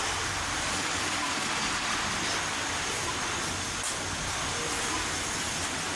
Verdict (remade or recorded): recorded